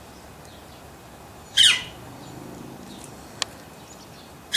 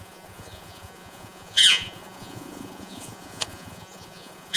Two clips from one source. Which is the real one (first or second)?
first